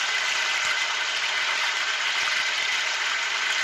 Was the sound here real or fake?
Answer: real